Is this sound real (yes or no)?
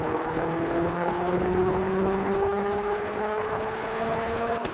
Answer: no